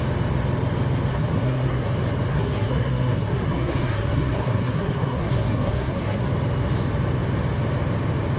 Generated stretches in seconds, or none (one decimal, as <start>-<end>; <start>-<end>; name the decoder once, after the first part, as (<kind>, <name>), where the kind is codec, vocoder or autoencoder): 1.1-1.9 (codec, SNAC); 2.3-6.3